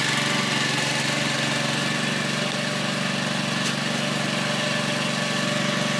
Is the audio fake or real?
real